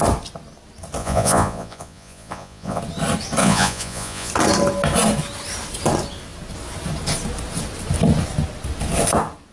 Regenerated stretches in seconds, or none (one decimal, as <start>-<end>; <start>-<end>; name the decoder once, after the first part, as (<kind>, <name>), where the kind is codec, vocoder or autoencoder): 1.0-2.8 (vocoder, Vocos); 3.4-4.3

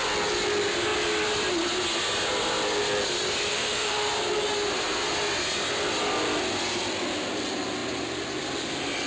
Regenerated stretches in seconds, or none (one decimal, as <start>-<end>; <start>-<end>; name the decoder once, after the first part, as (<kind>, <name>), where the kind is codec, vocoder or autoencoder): 3.5-4.1 (autoencoder, DAC-VAE)

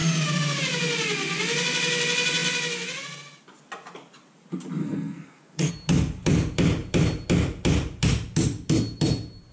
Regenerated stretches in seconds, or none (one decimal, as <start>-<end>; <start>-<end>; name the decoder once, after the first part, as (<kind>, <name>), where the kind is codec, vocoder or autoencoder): 4.8-5.7 (codec, SNAC)

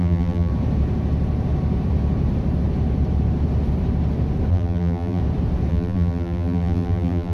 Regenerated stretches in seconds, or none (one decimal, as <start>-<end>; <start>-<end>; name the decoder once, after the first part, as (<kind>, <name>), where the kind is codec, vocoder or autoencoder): 0.0-0.5 (vocoder, BigVGAN v2); 4.5-5.2; 5.7-7.3

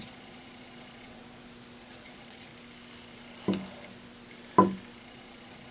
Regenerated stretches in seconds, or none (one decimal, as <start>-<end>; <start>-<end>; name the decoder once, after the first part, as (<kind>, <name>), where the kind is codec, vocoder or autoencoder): 0.0-1.2 (vocoder, Vocos); 1.8-2.5; 5.0-5.7

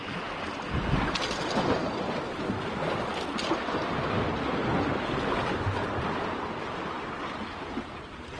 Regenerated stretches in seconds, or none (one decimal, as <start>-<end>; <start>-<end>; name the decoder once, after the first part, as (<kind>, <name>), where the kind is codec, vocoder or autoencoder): none

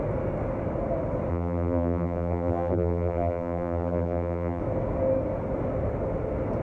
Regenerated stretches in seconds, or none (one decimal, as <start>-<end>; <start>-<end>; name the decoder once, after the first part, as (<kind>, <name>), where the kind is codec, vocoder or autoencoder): 1.3-4.6 (vocoder, BigVGAN v2)